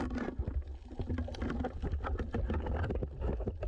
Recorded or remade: recorded